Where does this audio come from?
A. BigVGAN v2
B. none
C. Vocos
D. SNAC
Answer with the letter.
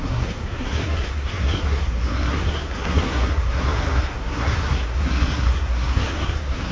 D